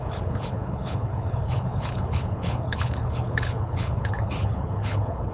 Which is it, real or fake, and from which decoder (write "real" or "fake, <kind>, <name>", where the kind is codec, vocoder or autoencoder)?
fake, codec, HILCodec